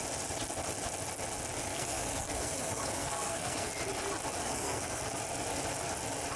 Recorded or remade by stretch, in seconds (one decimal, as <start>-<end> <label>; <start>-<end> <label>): 0.0-1.7 recorded; 1.7-3.7 remade; 3.7-4.4 recorded; 4.4-5.0 remade; 5.0-6.4 recorded